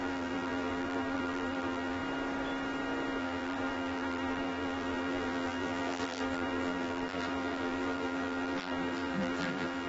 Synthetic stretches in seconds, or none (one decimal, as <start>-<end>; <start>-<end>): 0.0-2.0; 3.2-9.9